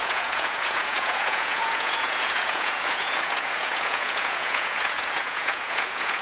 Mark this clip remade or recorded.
remade